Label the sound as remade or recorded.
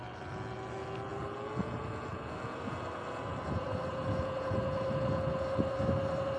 recorded